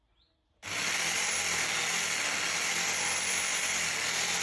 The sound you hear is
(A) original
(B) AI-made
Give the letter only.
A